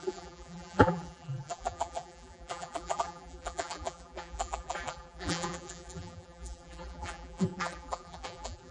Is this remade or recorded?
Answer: remade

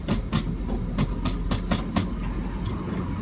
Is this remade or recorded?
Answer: recorded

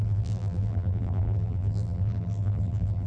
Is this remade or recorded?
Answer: remade